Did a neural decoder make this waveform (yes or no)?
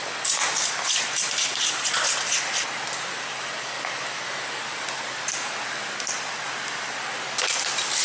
no